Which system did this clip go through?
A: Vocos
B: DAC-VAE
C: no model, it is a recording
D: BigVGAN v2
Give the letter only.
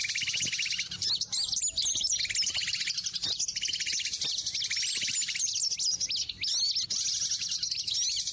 C